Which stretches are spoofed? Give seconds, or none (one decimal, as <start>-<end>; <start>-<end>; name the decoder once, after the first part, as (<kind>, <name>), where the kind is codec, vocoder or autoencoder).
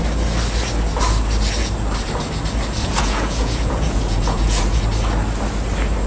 2.8-4.8 (vocoder, Vocos)